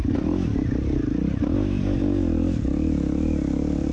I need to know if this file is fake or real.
real